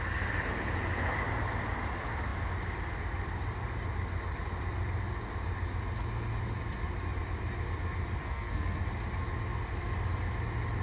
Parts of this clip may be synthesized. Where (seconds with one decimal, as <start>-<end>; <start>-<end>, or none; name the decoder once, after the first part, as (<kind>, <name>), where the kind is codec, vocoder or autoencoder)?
8.2-8.8 (codec, SNAC)